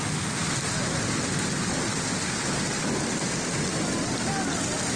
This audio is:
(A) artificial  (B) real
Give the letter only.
B